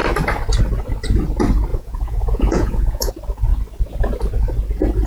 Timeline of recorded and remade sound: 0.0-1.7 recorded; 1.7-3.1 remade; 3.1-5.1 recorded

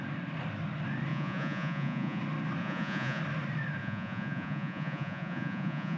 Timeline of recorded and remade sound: 0.0-1.1 recorded; 1.1-2.2 remade; 2.2-2.6 recorded; 2.6-3.2 remade; 3.2-3.8 recorded; 3.8-6.0 remade

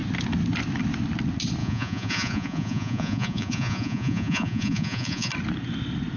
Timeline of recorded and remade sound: 0.0-1.6 recorded; 1.6-5.3 remade; 5.3-6.2 recorded

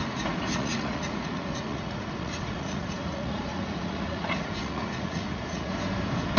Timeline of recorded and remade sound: 0.0-5.7 remade; 5.7-6.4 recorded

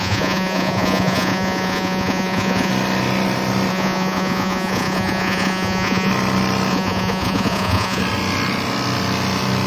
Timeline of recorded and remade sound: 0.0-2.7 remade; 2.7-3.7 recorded; 3.7-6.1 remade; 6.1-6.7 recorded; 6.7-8.0 remade; 8.0-9.7 recorded